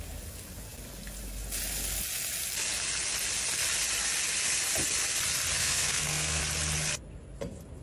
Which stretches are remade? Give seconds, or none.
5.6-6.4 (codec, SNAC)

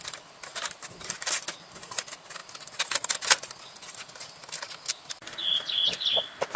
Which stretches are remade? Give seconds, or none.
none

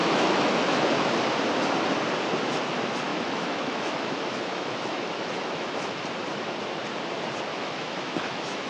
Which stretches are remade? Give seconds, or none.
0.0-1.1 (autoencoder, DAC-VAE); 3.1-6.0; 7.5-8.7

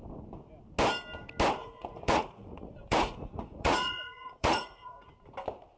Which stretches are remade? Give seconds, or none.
1.6-5.1 (vocoder, Vocos)

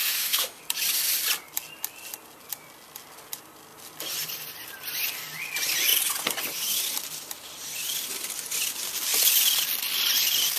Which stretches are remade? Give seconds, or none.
0.0-0.6 (autoencoder, DAC-VAE)

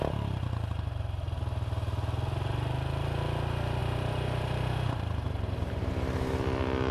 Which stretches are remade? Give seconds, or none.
3.8-5.9 (vocoder, BigVGAN v2)

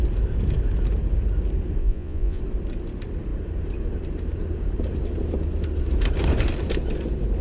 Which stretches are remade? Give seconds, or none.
1.8-2.4 (vocoder, Vocos)

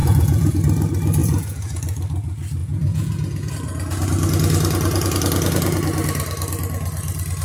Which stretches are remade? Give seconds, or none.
0.0-0.5 (vocoder, Vocos); 1.2-1.8; 2.6-3.5